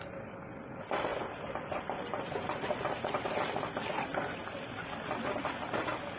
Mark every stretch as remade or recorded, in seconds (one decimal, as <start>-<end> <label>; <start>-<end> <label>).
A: 0.0-1.1 recorded; 1.1-3.3 remade; 3.3-4.4 recorded; 4.4-5.4 remade; 5.4-6.2 recorded